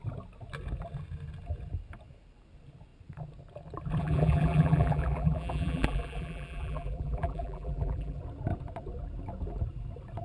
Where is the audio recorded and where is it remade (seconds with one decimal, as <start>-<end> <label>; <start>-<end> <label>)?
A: 0.0-4.0 recorded; 4.0-8.2 remade; 8.2-10.2 recorded